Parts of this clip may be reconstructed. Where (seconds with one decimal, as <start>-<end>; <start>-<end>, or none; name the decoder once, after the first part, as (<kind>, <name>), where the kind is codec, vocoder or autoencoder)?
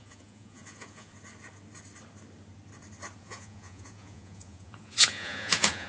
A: 0.0-1.1 (vocoder, Vocos); 3.2-5.9